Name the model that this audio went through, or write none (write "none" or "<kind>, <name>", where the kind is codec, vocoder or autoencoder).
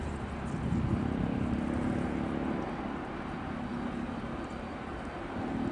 none